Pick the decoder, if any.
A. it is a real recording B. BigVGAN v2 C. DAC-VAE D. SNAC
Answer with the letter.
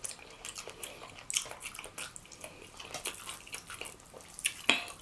A